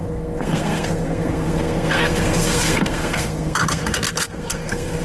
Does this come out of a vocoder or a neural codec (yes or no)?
yes